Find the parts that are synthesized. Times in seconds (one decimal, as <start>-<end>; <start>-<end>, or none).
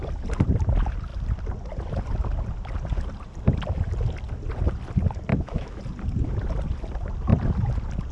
5.3-5.8